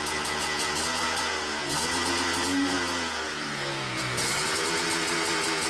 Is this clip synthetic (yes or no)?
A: yes